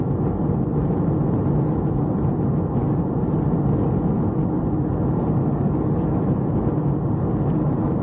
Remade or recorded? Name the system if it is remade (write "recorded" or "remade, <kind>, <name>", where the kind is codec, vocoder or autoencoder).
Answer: recorded